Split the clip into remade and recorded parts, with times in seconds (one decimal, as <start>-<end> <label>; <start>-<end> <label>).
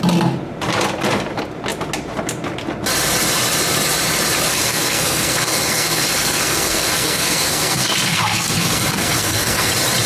0.0-4.5 recorded; 4.5-9.7 remade; 9.7-10.1 recorded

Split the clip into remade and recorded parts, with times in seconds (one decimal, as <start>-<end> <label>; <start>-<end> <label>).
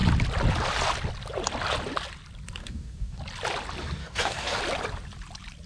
0.0-2.6 recorded; 2.6-3.2 remade; 3.2-4.0 recorded; 4.0-4.6 remade; 4.6-5.7 recorded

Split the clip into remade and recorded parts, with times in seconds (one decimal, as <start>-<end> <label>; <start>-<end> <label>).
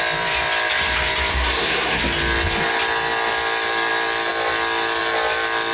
0.0-1.3 recorded; 1.3-2.0 remade; 2.0-5.7 recorded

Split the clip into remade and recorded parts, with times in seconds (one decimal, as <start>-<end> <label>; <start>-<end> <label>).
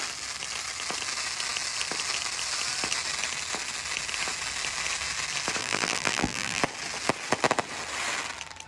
0.0-5.6 recorded; 5.6-6.6 remade; 6.6-8.7 recorded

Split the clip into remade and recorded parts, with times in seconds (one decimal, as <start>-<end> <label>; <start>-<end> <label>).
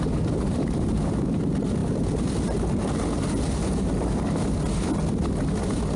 0.0-6.0 recorded